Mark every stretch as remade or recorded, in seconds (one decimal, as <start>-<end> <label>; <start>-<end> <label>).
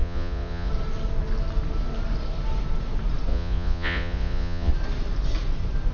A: 0.0-0.7 remade; 0.7-3.3 recorded; 3.3-4.7 remade; 4.7-5.9 recorded